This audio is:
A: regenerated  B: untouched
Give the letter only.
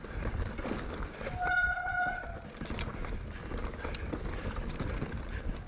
B